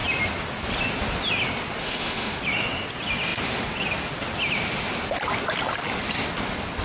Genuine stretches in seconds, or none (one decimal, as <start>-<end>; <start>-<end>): 0.0-1.8; 2.4-6.8